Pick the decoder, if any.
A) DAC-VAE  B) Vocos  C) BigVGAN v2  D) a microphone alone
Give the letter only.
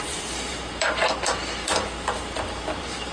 C